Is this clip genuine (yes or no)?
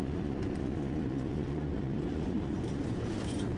no